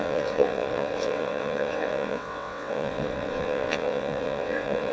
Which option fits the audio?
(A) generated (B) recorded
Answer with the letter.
A